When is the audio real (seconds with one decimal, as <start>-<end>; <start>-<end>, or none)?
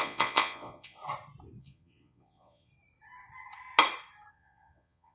1.0-1.6; 2.7-4.3